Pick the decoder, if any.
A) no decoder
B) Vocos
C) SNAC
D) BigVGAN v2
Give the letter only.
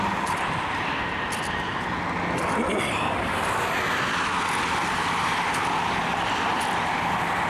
A